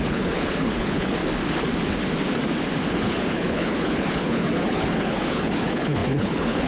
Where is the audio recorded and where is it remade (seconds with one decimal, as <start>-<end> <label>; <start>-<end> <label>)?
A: 0.0-1.2 remade; 1.2-2.9 recorded; 2.9-6.7 remade

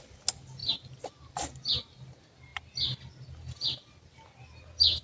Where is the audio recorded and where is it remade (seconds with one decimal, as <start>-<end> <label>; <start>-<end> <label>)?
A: 0.0-5.0 recorded

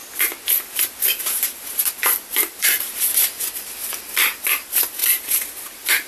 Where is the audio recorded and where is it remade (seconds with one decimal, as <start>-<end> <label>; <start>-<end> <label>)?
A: 0.0-1.0 recorded; 1.0-5.0 remade; 5.0-5.6 recorded; 5.6-6.1 remade

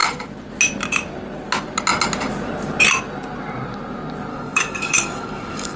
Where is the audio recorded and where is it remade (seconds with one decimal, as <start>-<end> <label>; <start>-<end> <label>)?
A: 0.0-4.3 recorded; 4.3-5.8 remade

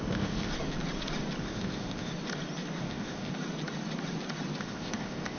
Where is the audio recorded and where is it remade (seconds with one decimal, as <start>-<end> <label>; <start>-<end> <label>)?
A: 0.0-0.5 remade; 0.5-1.4 recorded; 1.4-2.1 remade; 2.1-2.8 recorded; 2.8-3.3 remade; 3.3-4.6 recorded; 4.6-5.4 remade

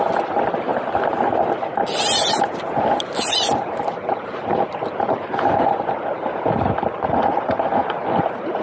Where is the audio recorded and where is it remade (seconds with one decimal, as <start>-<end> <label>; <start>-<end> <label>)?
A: 0.0-8.6 recorded

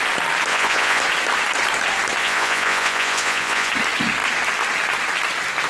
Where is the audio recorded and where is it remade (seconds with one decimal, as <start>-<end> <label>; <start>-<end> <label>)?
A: 0.0-0.5 recorded; 0.5-1.0 remade; 1.0-2.2 recorded; 2.2-3.7 remade; 3.7-5.7 recorded

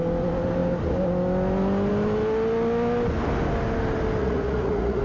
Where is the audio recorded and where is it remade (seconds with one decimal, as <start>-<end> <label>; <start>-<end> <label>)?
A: 0.0-4.2 recorded; 4.2-5.0 remade